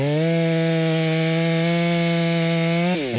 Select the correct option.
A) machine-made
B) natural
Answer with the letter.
B